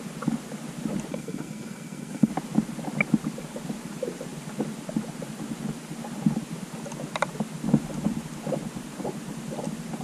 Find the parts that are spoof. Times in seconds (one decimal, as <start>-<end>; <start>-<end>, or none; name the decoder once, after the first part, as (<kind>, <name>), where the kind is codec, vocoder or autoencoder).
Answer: 1.1-2.3 (codec, SNAC)